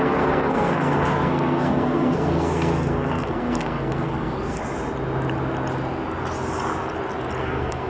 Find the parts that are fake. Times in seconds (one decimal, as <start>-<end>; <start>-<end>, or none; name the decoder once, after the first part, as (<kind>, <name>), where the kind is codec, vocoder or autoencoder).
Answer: 0.0-4.6 (codec, SNAC); 7.4-7.9